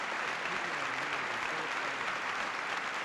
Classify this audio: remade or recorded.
remade